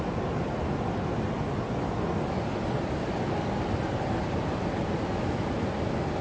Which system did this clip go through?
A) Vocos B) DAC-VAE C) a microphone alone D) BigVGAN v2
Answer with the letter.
C